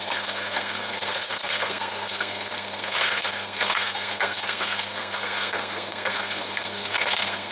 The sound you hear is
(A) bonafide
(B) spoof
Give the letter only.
B